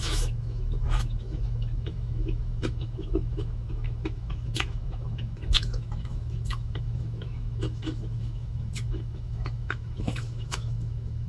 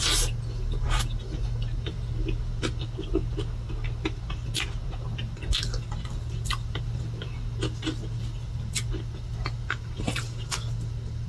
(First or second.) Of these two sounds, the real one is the second